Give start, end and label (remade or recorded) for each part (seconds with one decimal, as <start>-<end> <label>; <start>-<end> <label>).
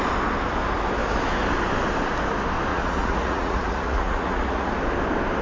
0.0-2.7 recorded; 2.7-4.7 remade; 4.7-5.4 recorded